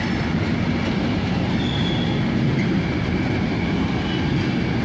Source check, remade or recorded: recorded